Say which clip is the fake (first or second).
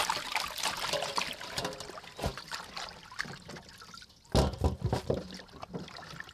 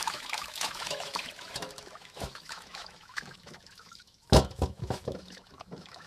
second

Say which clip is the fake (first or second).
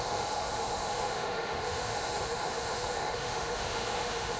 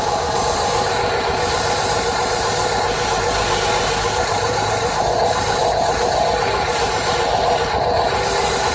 first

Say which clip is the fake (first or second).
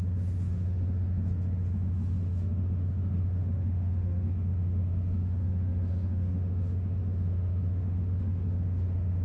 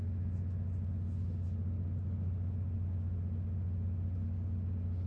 first